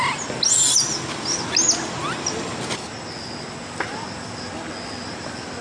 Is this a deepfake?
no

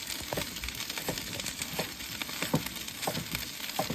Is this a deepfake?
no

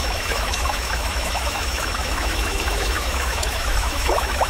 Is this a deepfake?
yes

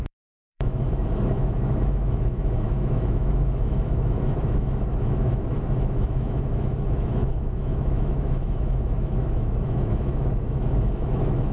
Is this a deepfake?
yes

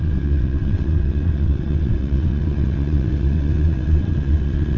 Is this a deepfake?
yes